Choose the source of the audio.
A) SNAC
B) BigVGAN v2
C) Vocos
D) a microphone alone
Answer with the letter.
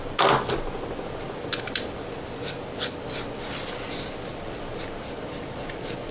D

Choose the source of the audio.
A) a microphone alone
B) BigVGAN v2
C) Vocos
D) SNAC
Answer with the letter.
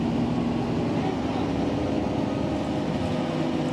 A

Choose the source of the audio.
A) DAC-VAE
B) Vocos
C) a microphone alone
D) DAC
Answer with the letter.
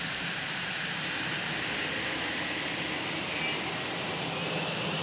C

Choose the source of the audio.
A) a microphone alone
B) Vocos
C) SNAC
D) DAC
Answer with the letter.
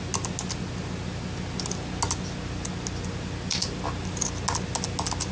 A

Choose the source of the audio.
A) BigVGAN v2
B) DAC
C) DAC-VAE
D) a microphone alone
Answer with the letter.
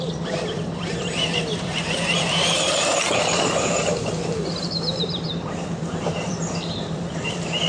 A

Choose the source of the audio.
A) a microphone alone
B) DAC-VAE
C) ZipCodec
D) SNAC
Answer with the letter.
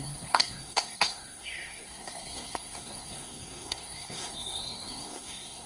D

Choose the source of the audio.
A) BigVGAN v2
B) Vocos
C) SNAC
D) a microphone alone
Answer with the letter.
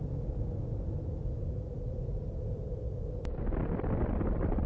D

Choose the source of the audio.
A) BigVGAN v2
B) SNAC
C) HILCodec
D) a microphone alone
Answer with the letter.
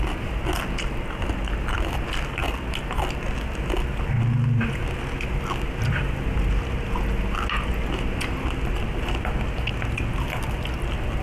D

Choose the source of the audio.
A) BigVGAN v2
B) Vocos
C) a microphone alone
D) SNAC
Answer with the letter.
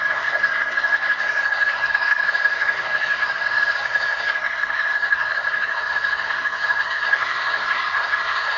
D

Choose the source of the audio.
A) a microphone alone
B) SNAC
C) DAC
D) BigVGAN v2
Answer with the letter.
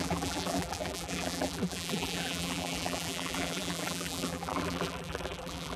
D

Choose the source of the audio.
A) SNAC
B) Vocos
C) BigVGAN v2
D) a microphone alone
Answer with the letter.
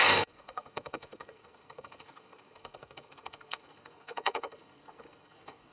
A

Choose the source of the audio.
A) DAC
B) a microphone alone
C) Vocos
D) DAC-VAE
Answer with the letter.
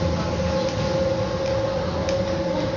B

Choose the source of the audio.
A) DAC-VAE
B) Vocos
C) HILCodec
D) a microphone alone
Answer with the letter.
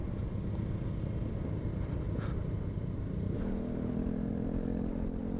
D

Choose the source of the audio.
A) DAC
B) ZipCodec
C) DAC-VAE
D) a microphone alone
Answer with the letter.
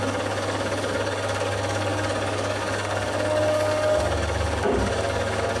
A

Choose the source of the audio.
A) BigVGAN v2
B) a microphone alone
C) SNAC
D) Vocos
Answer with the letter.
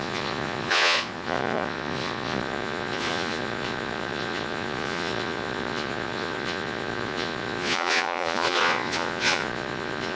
D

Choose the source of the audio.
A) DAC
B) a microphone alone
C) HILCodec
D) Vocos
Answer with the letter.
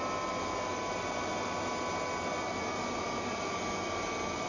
B